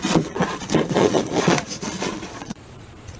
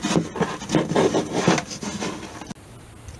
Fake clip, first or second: first